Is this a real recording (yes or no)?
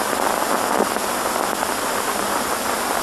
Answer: yes